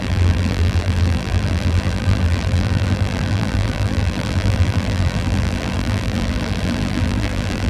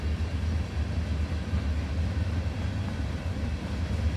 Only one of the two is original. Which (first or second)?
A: second